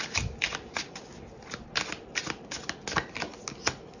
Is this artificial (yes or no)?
no